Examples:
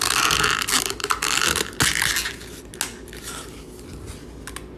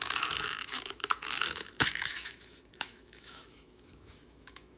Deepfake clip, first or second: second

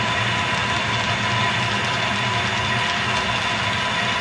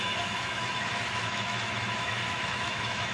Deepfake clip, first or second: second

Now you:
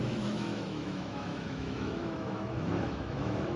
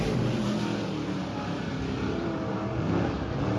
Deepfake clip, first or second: first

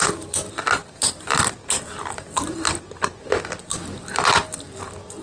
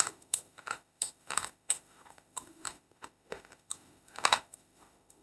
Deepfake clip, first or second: second